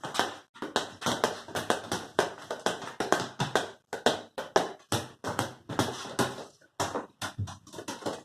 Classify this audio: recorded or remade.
recorded